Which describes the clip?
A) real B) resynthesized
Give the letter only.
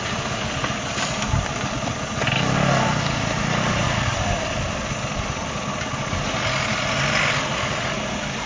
A